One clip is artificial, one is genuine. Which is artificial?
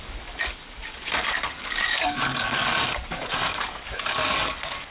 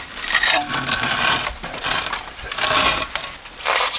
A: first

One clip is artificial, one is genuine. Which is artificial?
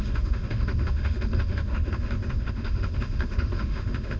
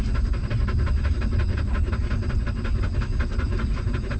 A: first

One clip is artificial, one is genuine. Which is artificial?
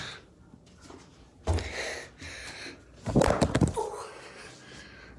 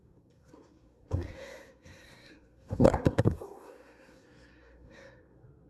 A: second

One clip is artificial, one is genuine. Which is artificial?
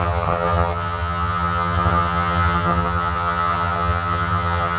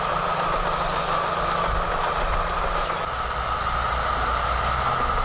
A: first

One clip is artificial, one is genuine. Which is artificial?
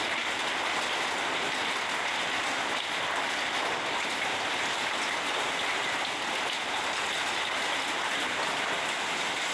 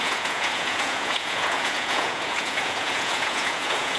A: second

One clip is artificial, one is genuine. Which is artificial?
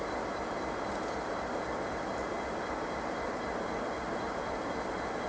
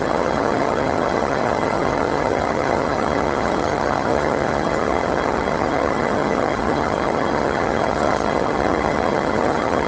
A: second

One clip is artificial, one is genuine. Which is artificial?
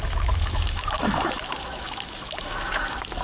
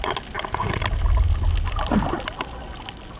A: first